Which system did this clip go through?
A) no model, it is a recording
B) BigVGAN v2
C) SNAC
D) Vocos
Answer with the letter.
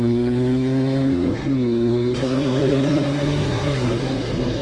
C